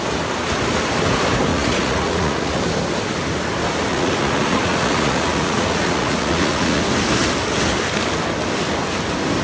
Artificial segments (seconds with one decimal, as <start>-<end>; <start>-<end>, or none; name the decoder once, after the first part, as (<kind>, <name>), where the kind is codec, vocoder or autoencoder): 1.5-2.6 (vocoder, Vocos); 3.9-6.8